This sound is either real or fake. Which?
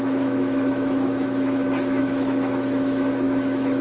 fake